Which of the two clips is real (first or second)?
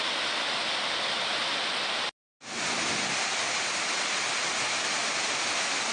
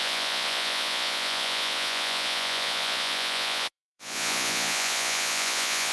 first